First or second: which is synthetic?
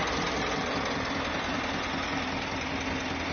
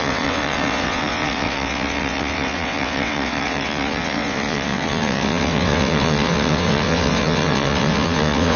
second